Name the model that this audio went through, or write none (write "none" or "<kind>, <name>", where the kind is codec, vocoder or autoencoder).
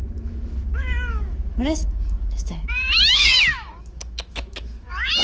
autoencoder, DAC-VAE